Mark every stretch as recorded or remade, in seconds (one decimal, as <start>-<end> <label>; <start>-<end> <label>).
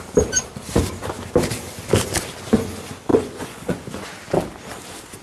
0.0-3.1 recorded; 3.1-4.1 remade; 4.1-5.2 recorded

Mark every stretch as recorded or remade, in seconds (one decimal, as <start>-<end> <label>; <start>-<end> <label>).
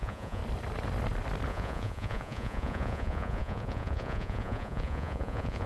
0.0-0.4 remade; 0.4-1.5 recorded; 1.5-5.7 remade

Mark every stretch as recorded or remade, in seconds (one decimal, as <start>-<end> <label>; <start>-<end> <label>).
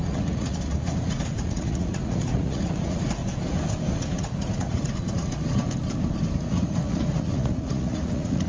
0.0-3.2 remade; 3.2-3.9 recorded; 3.9-5.6 remade; 5.6-6.5 recorded; 6.5-8.5 remade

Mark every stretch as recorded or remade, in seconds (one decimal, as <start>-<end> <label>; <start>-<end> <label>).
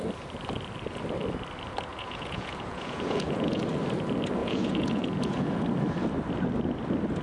0.0-1.9 recorded; 1.9-3.6 remade; 3.6-4.4 recorded; 4.4-5.5 remade; 5.5-7.2 recorded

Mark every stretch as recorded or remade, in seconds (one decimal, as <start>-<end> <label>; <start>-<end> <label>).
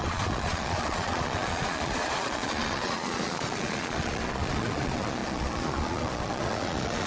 0.0-7.1 remade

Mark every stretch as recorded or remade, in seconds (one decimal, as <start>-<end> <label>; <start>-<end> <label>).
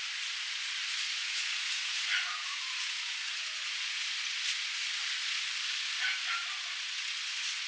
0.0-1.2 recorded; 1.2-4.0 remade; 4.0-7.7 recorded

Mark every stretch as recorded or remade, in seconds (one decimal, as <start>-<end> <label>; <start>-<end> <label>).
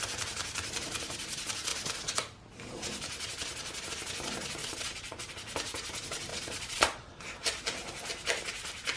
0.0-4.6 recorded; 4.6-5.3 remade; 5.3-6.3 recorded; 6.3-7.2 remade; 7.2-9.0 recorded